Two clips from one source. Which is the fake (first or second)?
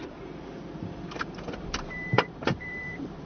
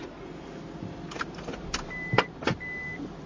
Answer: first